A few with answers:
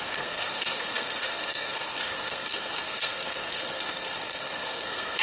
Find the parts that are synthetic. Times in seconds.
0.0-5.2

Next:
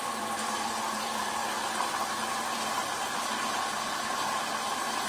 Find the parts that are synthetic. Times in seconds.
1.4-4.5

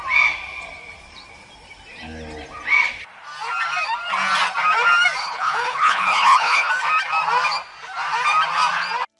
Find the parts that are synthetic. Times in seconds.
5.2-6.7

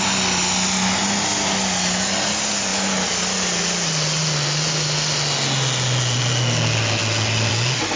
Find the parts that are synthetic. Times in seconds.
none

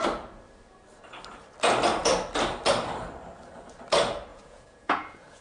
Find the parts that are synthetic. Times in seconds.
4.3-5.4